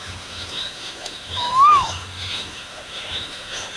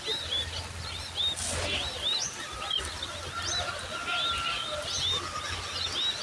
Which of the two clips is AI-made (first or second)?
first